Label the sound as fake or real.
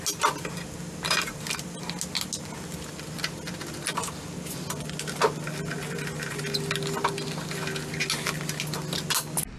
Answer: real